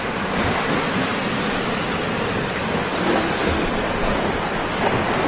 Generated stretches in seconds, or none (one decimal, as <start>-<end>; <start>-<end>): none